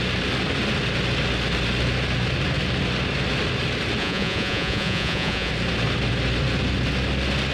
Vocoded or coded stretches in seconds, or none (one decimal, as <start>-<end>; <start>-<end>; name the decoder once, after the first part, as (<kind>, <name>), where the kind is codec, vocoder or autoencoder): 4.0-5.5 (vocoder, Vocos)